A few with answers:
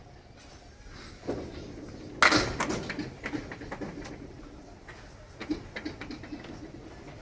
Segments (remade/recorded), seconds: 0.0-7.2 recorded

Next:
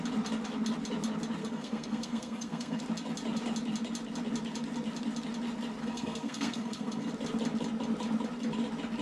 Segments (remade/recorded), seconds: 0.0-1.4 recorded; 1.4-2.8 remade; 2.8-5.8 recorded; 5.8-7.1 remade; 7.1-9.0 recorded

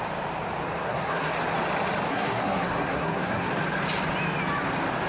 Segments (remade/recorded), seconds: 0.0-0.8 recorded; 0.8-1.3 remade; 1.3-2.1 recorded; 2.1-3.5 remade; 3.5-5.1 recorded

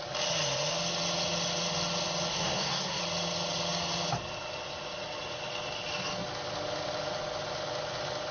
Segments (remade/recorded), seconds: 0.0-2.3 recorded; 2.3-3.0 remade; 3.0-8.3 recorded

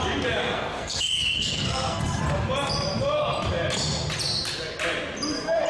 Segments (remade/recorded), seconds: 0.0-0.4 recorded; 0.4-2.2 remade; 2.2-5.7 recorded

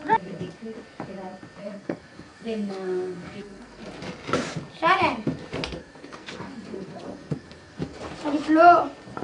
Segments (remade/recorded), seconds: 0.0-1.6 recorded; 1.6-3.8 remade; 3.8-5.8 recorded; 5.8-8.0 remade; 8.0-9.2 recorded

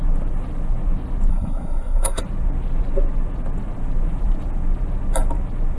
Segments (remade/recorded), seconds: 0.0-1.3 recorded; 1.3-2.2 remade; 2.2-5.8 recorded

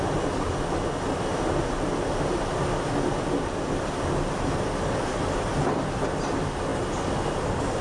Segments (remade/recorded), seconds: 0.0-7.8 recorded